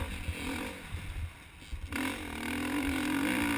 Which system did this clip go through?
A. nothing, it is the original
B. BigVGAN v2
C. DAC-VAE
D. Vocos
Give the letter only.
A